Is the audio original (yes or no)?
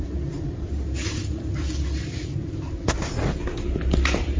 yes